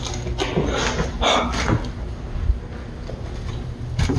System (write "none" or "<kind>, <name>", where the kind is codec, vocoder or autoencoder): none